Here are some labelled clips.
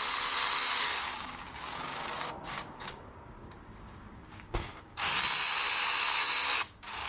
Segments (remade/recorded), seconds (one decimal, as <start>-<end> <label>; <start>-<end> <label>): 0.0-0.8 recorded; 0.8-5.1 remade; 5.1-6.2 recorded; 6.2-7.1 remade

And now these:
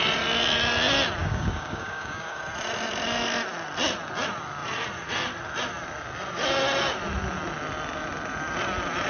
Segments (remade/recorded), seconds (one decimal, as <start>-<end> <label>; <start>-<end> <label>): 0.0-1.2 recorded; 1.2-2.4 remade; 2.4-9.1 recorded

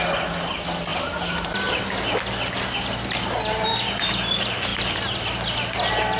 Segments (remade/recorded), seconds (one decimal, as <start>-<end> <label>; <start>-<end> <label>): 0.0-6.2 recorded

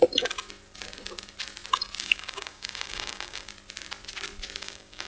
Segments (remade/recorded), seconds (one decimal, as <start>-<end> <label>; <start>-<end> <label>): 0.0-2.0 recorded; 2.0-3.5 remade; 3.5-4.6 recorded; 4.6-5.1 remade

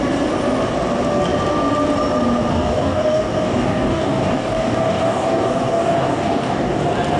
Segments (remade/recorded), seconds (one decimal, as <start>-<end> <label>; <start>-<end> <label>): 0.0-2.5 recorded; 2.5-6.8 remade; 6.8-7.2 recorded

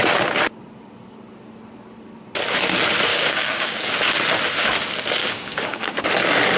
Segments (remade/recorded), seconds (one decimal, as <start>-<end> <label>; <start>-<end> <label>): 0.0-3.1 recorded; 3.1-3.8 remade; 3.8-5.2 recorded; 5.2-6.0 remade; 6.0-6.6 recorded